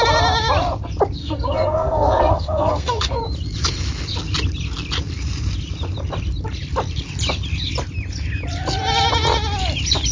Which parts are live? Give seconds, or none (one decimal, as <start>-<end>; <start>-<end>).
0.0-1.2; 3.2-10.1